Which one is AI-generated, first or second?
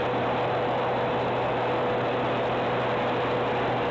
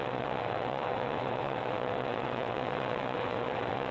second